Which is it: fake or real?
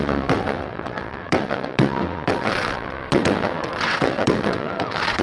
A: fake